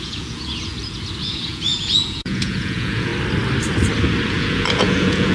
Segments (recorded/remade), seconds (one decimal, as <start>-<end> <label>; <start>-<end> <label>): 0.0-3.1 remade; 3.1-4.3 recorded; 4.3-5.3 remade